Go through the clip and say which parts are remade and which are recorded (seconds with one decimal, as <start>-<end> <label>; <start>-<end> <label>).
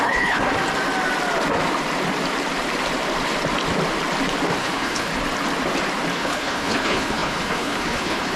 0.0-0.4 remade; 0.4-4.6 recorded; 4.6-5.1 remade; 5.1-6.1 recorded; 6.1-8.4 remade